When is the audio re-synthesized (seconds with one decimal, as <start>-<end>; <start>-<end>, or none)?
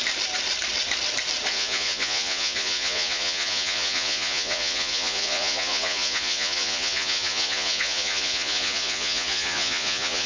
1.5-10.3